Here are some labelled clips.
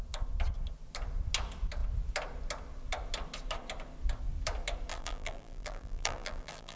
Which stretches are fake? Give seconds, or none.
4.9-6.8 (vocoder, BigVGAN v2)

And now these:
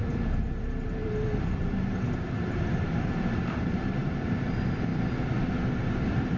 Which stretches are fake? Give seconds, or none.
0.0-4.9 (vocoder, BigVGAN v2); 5.9-6.4

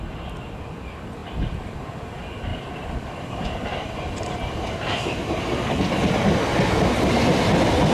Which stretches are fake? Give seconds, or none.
none